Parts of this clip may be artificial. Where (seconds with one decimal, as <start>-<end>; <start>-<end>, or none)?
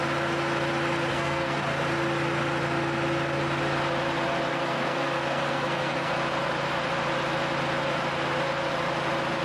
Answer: 1.1-1.6; 4.5-6.1